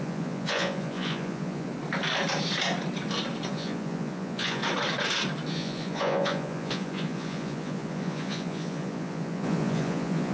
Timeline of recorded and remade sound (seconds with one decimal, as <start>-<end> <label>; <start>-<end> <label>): 0.0-1.7 remade; 1.7-3.5 recorded; 3.5-4.6 remade; 4.6-5.5 recorded; 5.5-10.3 remade